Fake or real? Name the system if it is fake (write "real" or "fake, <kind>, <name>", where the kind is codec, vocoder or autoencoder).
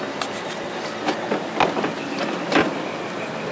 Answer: real